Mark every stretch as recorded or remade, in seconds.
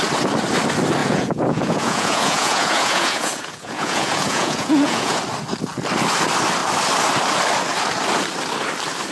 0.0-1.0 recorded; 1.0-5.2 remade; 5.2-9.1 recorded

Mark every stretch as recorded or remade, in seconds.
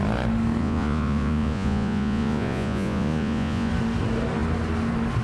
0.0-0.6 recorded; 0.6-3.7 remade; 3.7-5.2 recorded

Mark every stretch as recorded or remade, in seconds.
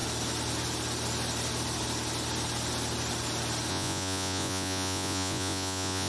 0.0-3.7 recorded; 3.7-6.1 remade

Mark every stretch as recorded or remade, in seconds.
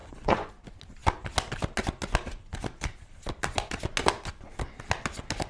0.0-0.5 remade; 0.5-5.5 recorded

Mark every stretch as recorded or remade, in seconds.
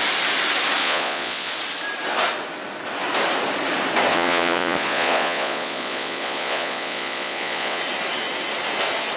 0.0-0.8 recorded; 0.8-1.5 remade; 1.5-4.1 recorded; 4.1-7.8 remade; 7.8-9.2 recorded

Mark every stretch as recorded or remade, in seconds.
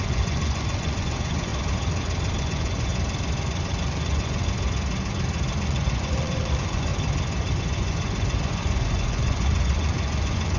0.0-1.5 remade; 1.5-2.4 recorded; 2.4-2.9 remade; 2.9-3.8 recorded; 3.8-4.4 remade; 4.4-5.6 recorded; 5.6-6.9 remade; 6.9-7.6 recorded; 7.6-10.6 remade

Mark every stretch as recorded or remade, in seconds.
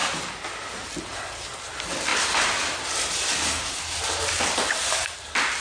0.0-5.6 recorded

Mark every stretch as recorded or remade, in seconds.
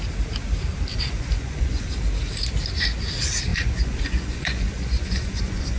0.0-0.9 recorded; 0.9-1.9 remade; 1.9-3.5 recorded; 3.5-5.8 remade